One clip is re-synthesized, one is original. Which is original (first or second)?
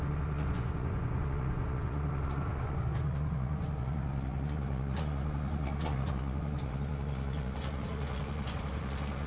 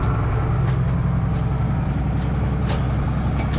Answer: second